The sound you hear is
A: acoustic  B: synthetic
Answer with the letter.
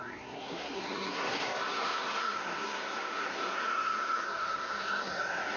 B